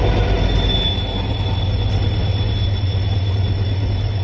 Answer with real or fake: real